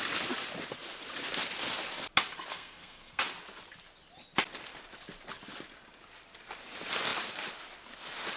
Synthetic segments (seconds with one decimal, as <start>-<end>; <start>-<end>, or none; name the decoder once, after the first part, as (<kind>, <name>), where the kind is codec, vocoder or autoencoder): 2.5-3.2 (codec, SNAC)